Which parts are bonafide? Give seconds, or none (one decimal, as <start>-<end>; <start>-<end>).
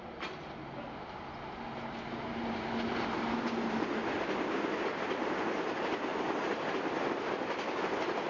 0.0-8.3